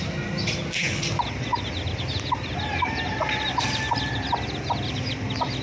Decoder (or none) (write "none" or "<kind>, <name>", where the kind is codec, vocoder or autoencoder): none